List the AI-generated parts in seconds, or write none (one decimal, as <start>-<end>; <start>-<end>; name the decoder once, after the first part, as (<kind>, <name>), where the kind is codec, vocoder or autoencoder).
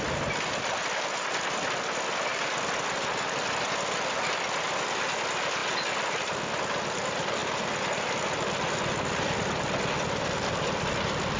none